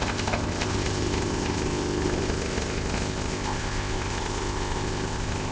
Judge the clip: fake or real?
fake